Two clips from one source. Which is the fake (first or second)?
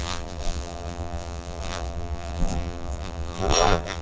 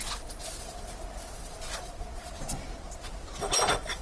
first